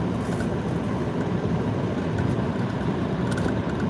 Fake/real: real